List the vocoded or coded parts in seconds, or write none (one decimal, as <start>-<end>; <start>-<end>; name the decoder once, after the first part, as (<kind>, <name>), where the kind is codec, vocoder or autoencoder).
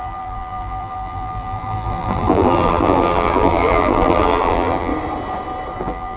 0.0-4.9 (vocoder, BigVGAN v2); 5.8-6.2